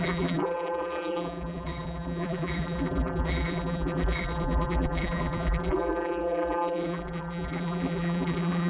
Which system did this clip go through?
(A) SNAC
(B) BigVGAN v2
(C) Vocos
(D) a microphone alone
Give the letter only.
B